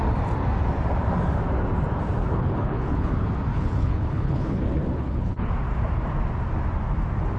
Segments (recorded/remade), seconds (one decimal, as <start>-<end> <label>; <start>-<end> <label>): 0.0-2.2 recorded; 2.2-3.1 remade; 3.1-3.5 recorded; 3.5-5.5 remade; 5.5-7.4 recorded